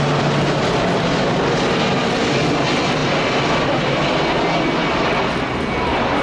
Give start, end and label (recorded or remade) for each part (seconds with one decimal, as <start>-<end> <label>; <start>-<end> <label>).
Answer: 0.0-6.2 recorded